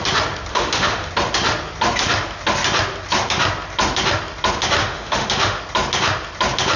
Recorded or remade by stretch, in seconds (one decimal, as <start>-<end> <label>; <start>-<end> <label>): 0.0-0.5 recorded; 0.5-1.1 remade; 1.1-4.8 recorded; 4.8-5.6 remade; 5.6-6.8 recorded